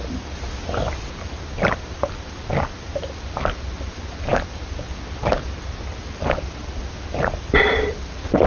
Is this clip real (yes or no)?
yes